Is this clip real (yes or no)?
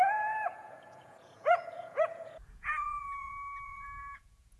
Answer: no